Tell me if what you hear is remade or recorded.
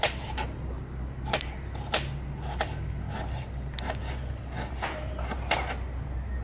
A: recorded